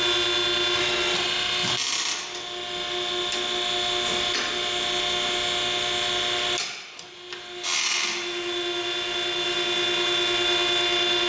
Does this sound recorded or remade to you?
recorded